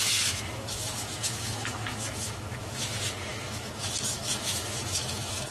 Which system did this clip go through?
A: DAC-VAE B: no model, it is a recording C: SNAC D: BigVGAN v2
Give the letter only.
A